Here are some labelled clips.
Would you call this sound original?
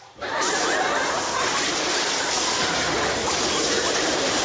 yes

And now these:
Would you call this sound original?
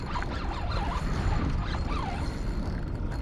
no